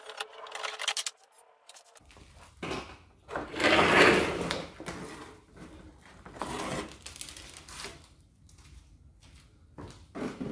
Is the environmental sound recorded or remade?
recorded